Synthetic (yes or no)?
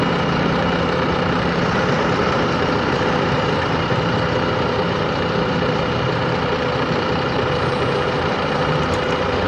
yes